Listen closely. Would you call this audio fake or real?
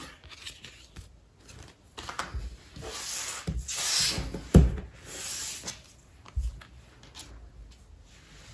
real